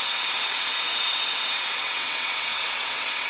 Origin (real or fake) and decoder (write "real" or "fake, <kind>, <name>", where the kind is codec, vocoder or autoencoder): fake, vocoder, WaveNeXt